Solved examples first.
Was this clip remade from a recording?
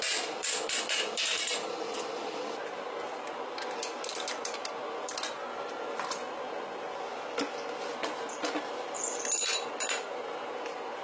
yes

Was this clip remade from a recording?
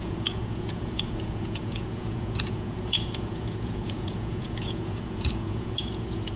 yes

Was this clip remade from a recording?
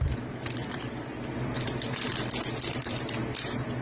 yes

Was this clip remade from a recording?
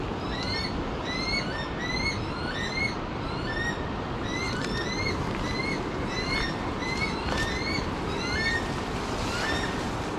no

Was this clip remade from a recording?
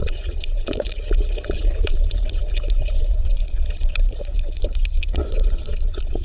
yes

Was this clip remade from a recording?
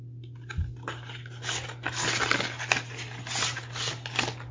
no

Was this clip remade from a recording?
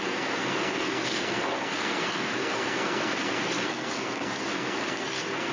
yes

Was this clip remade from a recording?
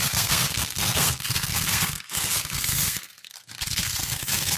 yes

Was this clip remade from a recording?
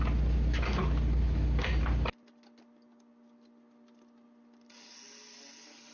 no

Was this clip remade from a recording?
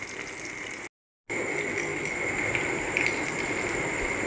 no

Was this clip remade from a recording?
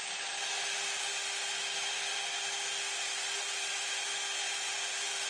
no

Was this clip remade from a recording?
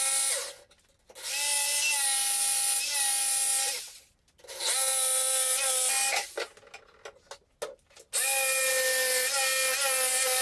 no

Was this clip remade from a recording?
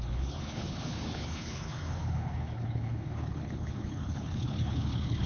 yes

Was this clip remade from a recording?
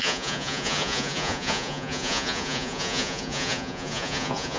yes